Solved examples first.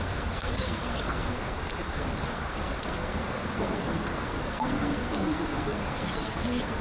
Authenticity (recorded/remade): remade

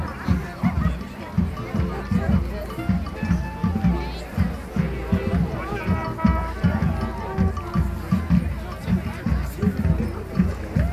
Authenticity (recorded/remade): recorded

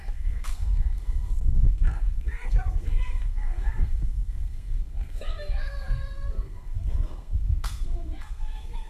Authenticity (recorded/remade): remade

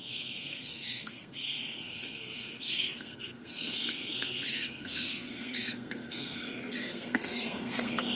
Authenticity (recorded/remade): remade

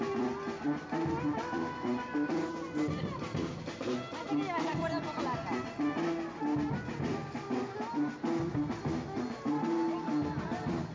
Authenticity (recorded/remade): recorded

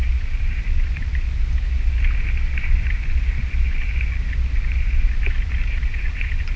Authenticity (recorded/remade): recorded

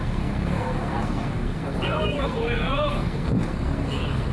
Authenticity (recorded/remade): remade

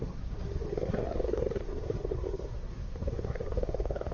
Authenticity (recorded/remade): remade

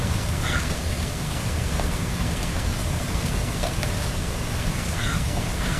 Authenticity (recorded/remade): remade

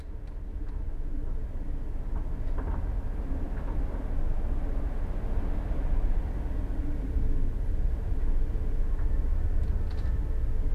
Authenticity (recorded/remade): recorded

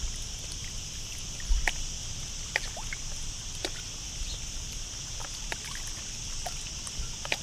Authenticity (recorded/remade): recorded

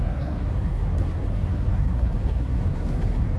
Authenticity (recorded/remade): remade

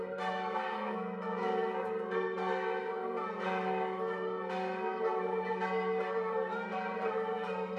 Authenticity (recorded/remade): remade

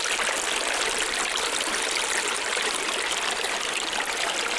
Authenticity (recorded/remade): recorded